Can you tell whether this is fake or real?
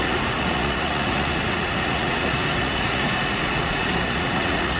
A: fake